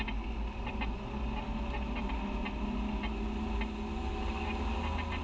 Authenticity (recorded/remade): recorded